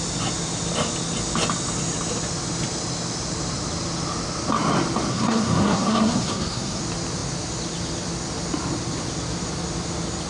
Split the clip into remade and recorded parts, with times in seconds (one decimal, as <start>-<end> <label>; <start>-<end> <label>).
0.0-5.1 recorded; 5.1-6.8 remade; 6.8-10.3 recorded